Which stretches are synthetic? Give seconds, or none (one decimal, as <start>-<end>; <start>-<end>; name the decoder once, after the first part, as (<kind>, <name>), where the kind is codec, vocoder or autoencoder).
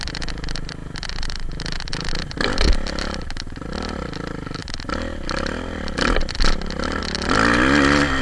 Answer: none